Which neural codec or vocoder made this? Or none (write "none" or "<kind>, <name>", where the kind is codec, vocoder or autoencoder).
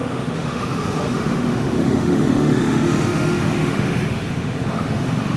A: autoencoder, DAC-VAE